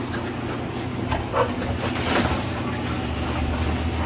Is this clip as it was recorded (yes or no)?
yes